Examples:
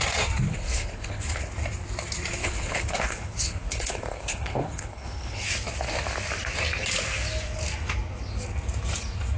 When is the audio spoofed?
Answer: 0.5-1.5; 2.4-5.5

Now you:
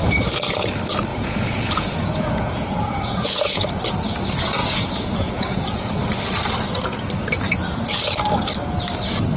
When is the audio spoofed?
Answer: 1.1-3.7; 4.6-6.0

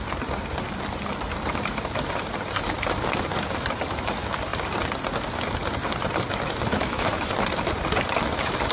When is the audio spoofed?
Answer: 6.7-7.3

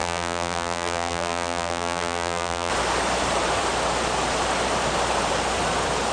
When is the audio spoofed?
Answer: 0.0-2.7

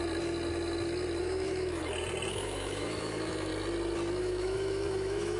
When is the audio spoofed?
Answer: 1.2-1.8; 2.3-3.5; 4.2-5.4

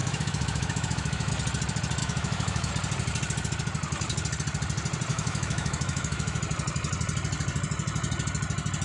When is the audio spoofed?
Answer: 0.0-1.3; 2.0-2.7; 5.1-6.4